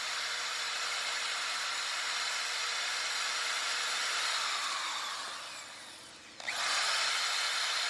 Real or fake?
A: fake